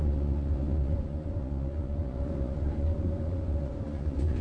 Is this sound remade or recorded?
remade